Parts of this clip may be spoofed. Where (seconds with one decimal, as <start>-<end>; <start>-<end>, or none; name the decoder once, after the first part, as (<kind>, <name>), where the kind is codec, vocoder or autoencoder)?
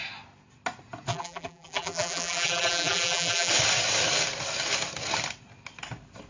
1.1-3.5 (vocoder, BigVGAN v2)